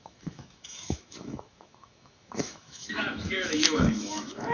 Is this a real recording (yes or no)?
no